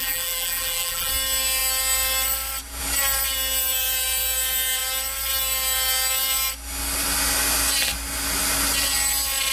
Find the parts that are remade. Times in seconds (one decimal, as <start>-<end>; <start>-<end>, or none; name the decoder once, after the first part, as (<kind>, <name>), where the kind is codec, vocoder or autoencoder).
0.0-1.1 (vocoder, BigVGAN v2)